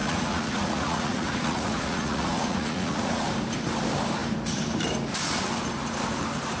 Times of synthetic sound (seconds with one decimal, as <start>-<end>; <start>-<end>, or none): 0.0-3.3

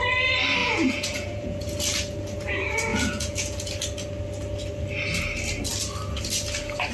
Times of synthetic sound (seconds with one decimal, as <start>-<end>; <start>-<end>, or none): 0.6-1.8; 2.9-3.7